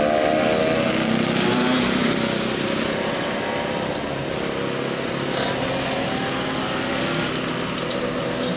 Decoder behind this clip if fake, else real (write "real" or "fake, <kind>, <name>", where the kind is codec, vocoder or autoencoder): real